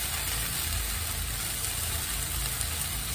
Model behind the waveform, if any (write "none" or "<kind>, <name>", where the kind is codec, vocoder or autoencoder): none